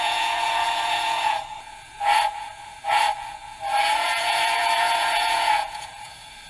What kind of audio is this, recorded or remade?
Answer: remade